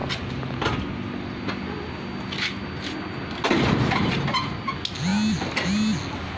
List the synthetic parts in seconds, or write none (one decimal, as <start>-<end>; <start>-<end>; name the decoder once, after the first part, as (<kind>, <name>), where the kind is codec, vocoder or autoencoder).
none